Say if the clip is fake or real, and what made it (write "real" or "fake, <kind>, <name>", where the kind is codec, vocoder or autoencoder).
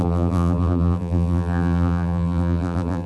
fake, vocoder, BigVGAN v2